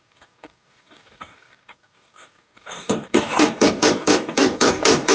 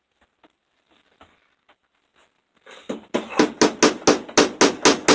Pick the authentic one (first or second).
second